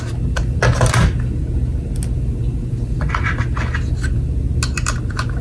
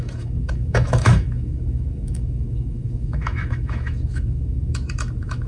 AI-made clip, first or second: second